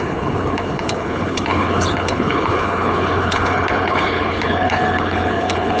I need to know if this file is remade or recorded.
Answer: remade